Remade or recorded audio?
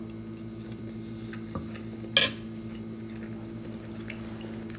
recorded